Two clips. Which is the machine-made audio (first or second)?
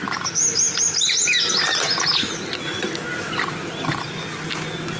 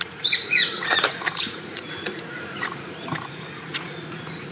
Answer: second